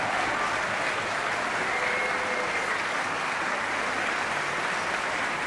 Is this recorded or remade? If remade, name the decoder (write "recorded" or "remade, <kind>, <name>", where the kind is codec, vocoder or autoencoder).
recorded